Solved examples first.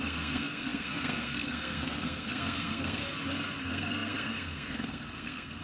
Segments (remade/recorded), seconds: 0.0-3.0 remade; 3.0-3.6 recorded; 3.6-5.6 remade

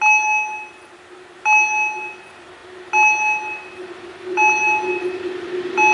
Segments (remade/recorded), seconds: 0.0-5.9 recorded

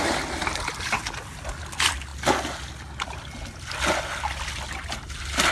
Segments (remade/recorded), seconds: 0.0-5.5 recorded

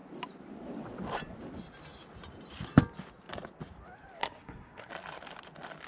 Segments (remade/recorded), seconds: 0.0-4.2 recorded; 4.2-4.9 remade; 4.9-5.9 recorded